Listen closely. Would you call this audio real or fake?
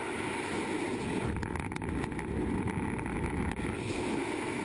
real